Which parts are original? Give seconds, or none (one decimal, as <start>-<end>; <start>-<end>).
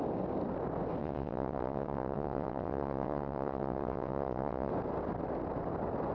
0.0-1.0; 4.7-6.1